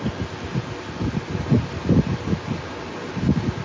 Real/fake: real